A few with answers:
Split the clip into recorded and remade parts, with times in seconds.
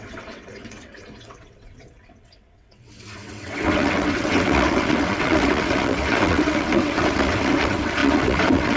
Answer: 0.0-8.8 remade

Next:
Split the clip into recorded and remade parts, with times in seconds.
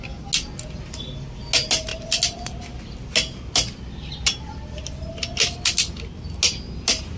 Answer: 0.0-7.2 recorded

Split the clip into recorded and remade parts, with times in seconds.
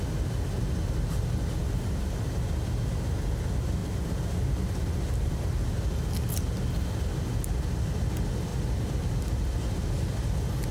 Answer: 0.0-1.6 recorded; 1.6-2.3 remade; 2.3-3.8 recorded; 3.8-5.7 remade; 5.7-10.7 recorded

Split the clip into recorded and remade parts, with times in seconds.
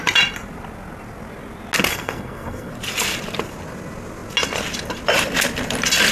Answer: 0.0-1.9 recorded; 1.9-2.7 remade; 2.7-6.1 recorded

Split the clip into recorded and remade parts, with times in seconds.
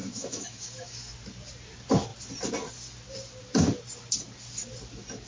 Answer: 0.0-1.1 remade; 1.1-5.3 recorded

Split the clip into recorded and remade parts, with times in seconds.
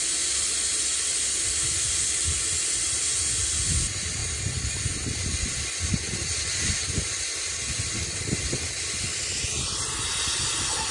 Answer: 0.0-10.9 recorded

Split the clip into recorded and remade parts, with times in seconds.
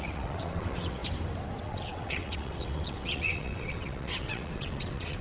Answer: 0.0-1.0 remade; 1.0-1.6 recorded; 1.6-5.2 remade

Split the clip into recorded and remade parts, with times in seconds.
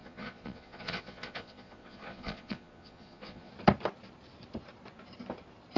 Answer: 0.0-3.5 remade; 3.5-5.8 recorded